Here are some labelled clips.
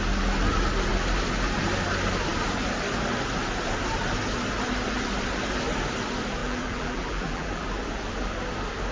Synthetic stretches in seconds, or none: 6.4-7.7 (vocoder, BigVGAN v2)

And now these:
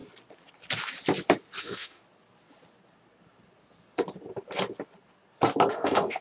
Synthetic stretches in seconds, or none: 1.6-2.0 (autoencoder, DAC-VAE); 5.7-6.2

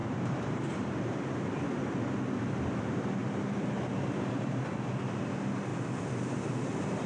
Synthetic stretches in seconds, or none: 0.0-1.5 (vocoder, BigVGAN v2); 3.2-4.6

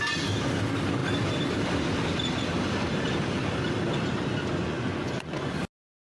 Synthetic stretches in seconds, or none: 4.6-5.5 (vocoder, Vocos)

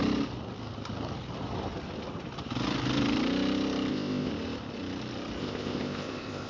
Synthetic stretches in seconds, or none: 3.9-4.3 (codec, ZipCodec); 5.4-6.5

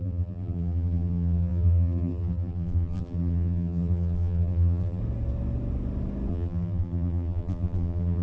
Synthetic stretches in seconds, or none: 0.0-5.0 (vocoder, BigVGAN v2); 6.3-8.2

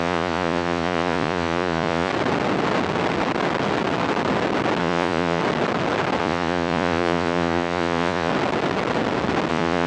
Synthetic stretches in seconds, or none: 0.0-2.1 (vocoder, Vocos); 4.8-5.4; 6.2-8.3; 9.5-9.9